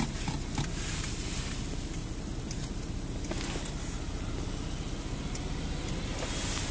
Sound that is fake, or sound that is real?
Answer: real